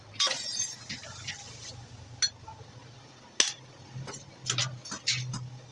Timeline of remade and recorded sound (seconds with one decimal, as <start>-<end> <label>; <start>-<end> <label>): 0.0-5.7 recorded